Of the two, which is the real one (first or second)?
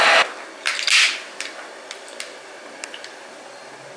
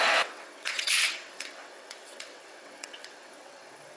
first